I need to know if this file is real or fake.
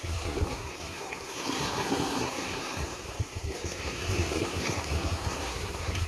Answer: fake